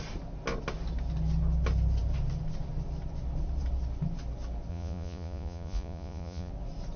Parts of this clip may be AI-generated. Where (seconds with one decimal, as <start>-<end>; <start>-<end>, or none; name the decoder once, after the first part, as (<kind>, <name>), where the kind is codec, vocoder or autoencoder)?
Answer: 4.7-6.5 (vocoder, Vocos)